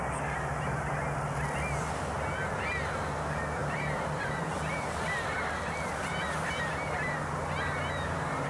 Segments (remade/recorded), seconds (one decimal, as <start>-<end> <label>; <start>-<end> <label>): 0.0-3.6 recorded; 3.6-6.7 remade; 6.7-8.5 recorded

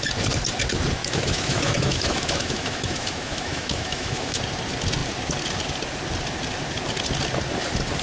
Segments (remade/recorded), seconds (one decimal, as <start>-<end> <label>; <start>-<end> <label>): 0.0-1.0 recorded; 1.0-4.4 remade; 4.4-8.0 recorded